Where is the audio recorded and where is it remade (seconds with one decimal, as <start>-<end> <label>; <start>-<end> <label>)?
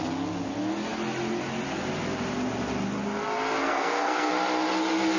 0.0-3.6 recorded; 3.6-4.3 remade; 4.3-5.2 recorded